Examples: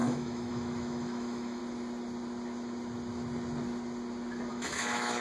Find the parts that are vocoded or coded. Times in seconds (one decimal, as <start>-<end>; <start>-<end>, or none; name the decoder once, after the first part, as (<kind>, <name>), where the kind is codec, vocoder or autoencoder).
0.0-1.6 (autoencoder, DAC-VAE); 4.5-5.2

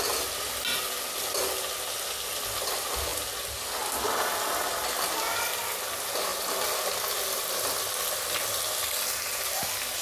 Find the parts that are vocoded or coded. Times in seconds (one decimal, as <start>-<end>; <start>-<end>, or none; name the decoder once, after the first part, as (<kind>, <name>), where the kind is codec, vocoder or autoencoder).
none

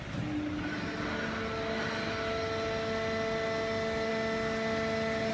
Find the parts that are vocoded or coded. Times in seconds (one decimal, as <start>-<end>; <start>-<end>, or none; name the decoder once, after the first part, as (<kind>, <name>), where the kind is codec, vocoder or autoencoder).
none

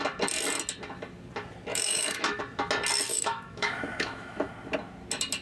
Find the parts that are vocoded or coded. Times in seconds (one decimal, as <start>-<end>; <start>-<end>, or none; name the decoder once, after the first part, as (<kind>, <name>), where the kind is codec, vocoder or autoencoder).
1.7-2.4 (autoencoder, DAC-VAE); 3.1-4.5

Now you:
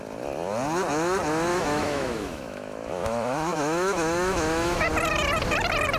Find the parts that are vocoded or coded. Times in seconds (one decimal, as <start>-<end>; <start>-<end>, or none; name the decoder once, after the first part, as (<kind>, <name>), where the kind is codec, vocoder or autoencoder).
1.5-4.9 (autoencoder, DAC-VAE)